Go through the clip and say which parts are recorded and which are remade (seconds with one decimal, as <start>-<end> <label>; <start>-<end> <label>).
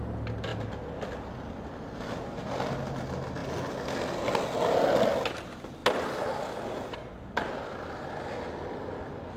0.0-9.4 recorded